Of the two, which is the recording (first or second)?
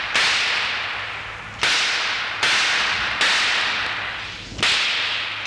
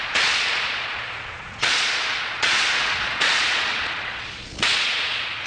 first